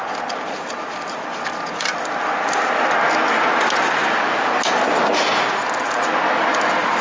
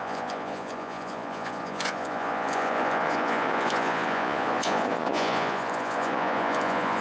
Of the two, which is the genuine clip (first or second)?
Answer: first